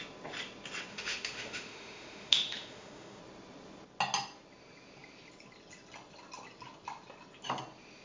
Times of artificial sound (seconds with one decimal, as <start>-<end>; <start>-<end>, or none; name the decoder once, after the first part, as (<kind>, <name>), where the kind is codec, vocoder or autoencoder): 0.9-3.2 (autoencoder, DAC-VAE)